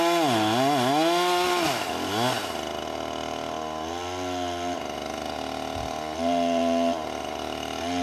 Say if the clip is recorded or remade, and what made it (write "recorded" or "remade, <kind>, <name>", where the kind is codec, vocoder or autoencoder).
recorded